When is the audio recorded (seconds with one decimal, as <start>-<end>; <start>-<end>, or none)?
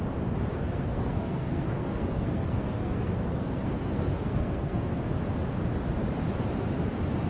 0.0-0.5; 4.9-7.3